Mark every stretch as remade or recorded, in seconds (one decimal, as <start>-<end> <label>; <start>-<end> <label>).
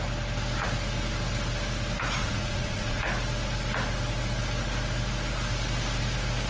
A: 0.0-2.2 recorded; 2.2-3.0 remade; 3.0-6.5 recorded